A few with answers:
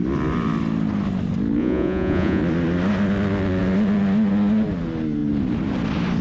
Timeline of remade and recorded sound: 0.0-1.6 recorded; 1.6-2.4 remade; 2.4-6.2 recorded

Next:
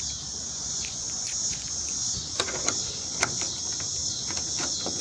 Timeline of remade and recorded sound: 0.0-0.5 recorded; 0.5-3.5 remade; 3.5-4.0 recorded; 4.0-5.0 remade

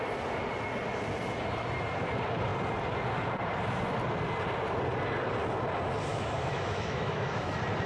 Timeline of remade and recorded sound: 0.0-6.1 recorded; 6.1-7.5 remade; 7.5-7.9 recorded